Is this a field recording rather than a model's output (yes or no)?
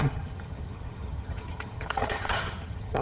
no